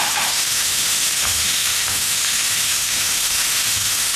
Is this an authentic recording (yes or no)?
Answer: no